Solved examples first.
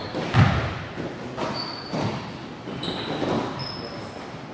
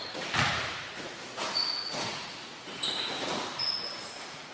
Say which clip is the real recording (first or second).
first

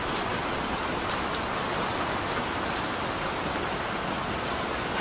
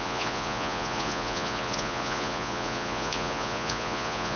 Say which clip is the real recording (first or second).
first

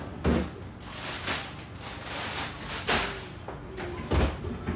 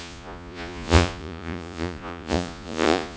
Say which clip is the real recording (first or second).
first